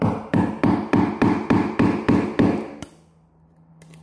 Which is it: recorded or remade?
recorded